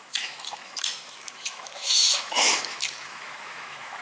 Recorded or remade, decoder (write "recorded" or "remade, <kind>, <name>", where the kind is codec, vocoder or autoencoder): remade, autoencoder, DAC-VAE